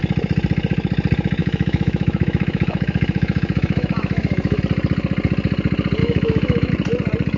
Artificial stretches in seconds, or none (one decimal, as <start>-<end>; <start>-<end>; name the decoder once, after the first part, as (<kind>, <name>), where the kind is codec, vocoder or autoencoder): 1.4-4.6 (autoencoder, DAC-VAE); 6.0-6.7